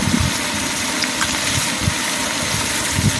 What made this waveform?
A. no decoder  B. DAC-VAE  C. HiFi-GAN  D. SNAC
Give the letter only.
A